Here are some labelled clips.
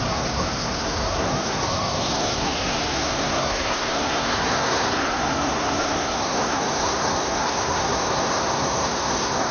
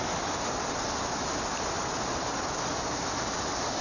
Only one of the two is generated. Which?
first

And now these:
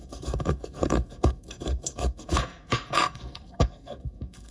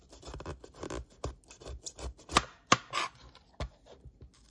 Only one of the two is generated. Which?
first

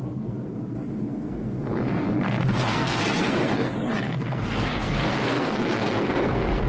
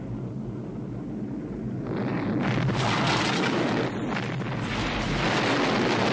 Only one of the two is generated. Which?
first